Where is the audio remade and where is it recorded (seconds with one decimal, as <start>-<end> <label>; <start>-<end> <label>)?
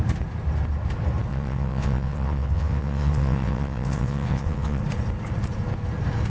0.0-1.3 recorded; 1.3-4.8 remade; 4.8-6.3 recorded